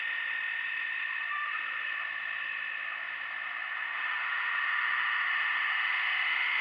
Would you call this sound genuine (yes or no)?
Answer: no